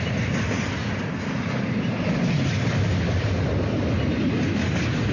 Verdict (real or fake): real